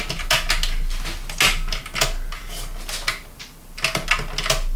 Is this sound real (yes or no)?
yes